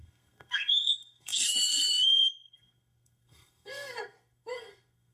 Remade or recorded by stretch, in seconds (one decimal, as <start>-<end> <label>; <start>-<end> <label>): 0.0-5.1 remade